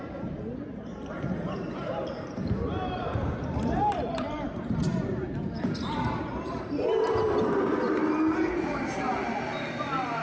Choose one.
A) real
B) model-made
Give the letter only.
B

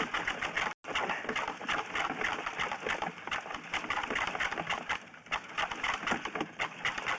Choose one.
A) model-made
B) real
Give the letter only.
B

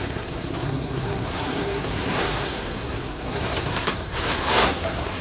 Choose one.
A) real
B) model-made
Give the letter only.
B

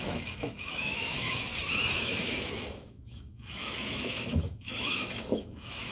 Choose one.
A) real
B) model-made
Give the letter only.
B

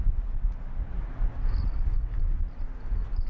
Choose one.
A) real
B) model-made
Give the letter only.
A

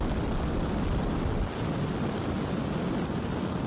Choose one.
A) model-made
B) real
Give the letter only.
A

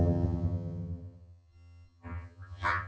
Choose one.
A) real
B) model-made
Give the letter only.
B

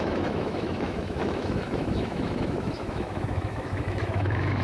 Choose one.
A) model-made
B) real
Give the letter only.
A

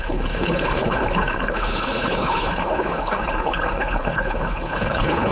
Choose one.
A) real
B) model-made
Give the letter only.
B